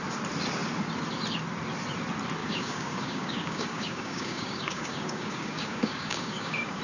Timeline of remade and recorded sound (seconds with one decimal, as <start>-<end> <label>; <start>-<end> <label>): 0.0-2.4 recorded; 2.4-6.8 remade